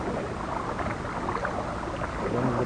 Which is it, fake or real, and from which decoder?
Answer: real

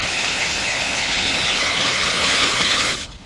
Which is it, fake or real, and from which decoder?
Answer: fake, codec, HILCodec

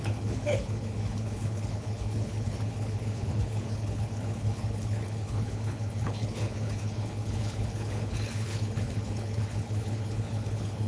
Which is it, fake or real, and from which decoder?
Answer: fake, codec, HILCodec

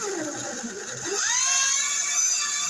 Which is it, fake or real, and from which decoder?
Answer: real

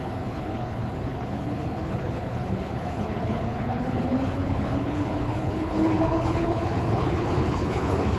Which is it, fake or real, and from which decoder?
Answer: fake, codec, HILCodec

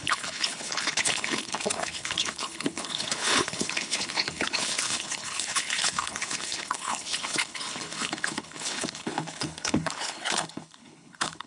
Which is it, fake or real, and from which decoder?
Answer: fake, codec, HILCodec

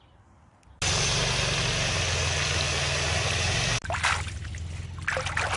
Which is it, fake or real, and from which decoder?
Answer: real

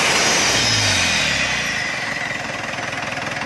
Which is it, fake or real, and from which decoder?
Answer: real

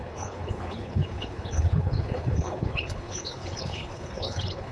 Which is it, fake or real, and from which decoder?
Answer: fake, codec, HILCodec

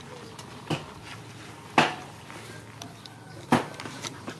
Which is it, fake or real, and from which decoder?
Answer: real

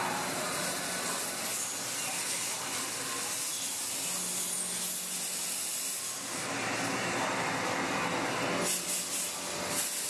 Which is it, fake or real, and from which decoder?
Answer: real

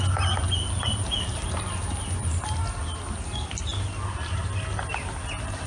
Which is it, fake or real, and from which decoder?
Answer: real